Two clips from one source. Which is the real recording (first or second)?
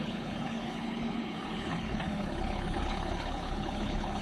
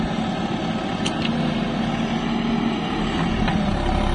second